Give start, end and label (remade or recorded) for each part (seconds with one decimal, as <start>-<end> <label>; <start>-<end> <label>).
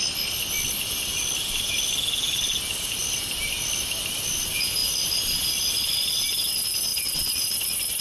0.0-8.0 recorded